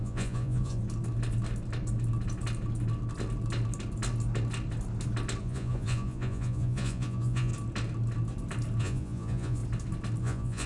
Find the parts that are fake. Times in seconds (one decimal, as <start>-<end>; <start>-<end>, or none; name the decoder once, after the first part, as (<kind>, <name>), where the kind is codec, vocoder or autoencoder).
0.0-0.8 (vocoder, Vocos); 5.4-7.5; 8.8-9.6; 10.2-10.7